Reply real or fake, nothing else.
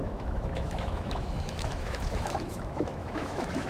fake